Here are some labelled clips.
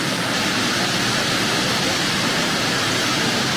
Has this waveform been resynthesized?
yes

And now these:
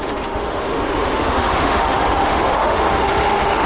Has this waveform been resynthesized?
yes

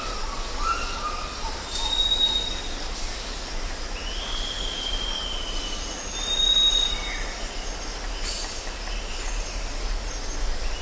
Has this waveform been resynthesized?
no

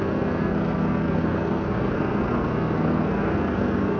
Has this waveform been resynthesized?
yes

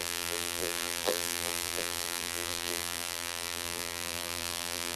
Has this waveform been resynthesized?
yes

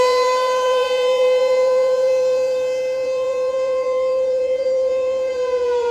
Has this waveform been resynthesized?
yes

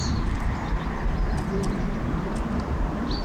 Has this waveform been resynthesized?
no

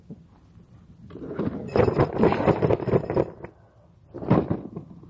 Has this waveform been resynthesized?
no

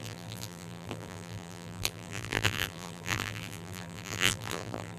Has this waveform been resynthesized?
yes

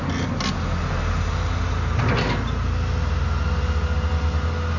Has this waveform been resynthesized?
no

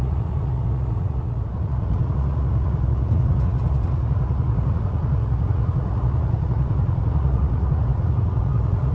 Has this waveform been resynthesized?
yes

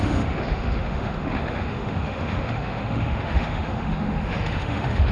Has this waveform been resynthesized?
yes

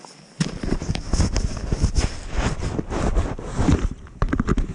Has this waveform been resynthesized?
no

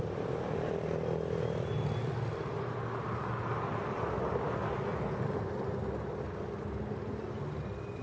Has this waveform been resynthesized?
no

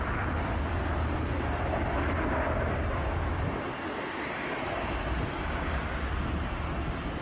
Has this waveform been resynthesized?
no